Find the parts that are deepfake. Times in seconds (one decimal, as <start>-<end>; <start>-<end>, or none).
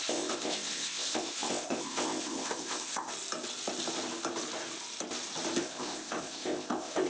0.0-3.1; 5.6-7.1